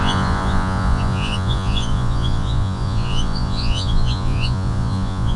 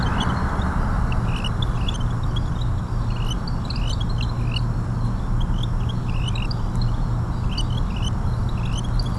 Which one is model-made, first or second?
first